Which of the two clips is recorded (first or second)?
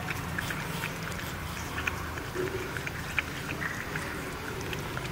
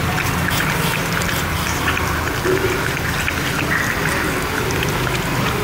second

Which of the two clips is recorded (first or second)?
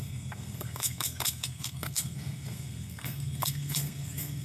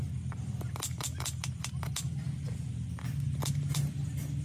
second